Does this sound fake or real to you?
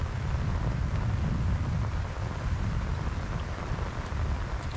real